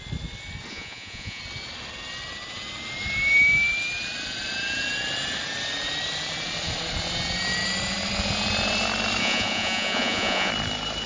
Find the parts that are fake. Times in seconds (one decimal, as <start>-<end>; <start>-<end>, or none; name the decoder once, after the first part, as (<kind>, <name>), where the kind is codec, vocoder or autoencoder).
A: 0.7-1.4 (vocoder, Vocos); 9.2-10.5